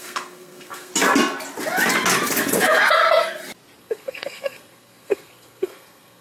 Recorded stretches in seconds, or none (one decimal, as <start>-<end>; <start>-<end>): 0.9-3.8